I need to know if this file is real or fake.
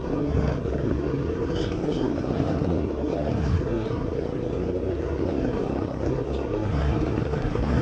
fake